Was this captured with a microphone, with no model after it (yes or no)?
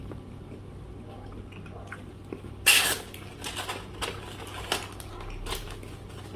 yes